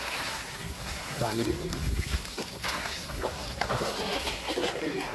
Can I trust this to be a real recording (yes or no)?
no